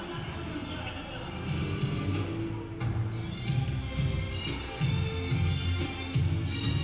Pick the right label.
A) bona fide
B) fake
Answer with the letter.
A